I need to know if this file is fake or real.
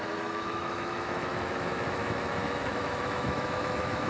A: fake